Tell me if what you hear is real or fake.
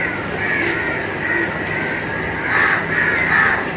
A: real